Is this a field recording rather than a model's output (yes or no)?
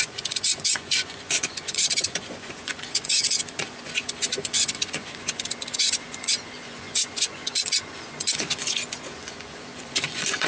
no